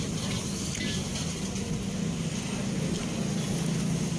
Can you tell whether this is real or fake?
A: real